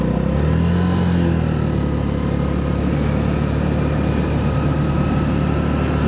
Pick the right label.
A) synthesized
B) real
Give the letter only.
B